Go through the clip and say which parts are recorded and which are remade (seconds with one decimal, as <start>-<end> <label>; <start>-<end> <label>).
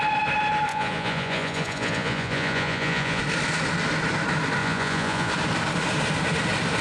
0.0-0.7 recorded; 0.7-3.2 remade; 3.2-4.6 recorded; 4.6-5.3 remade; 5.3-6.8 recorded